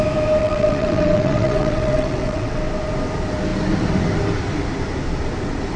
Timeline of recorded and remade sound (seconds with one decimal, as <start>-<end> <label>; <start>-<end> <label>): 0.0-0.4 recorded; 0.4-2.6 remade; 2.6-5.8 recorded